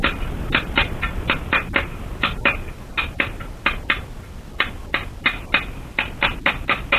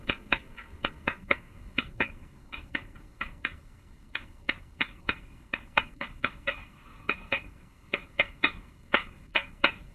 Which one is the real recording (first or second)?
first